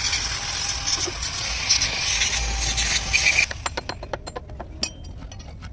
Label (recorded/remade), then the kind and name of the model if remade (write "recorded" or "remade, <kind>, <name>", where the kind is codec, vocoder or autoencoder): recorded